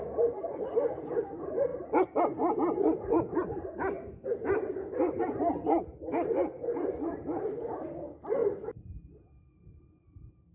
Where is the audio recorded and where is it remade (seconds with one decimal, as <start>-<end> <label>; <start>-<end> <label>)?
0.0-8.4 recorded; 8.4-10.5 remade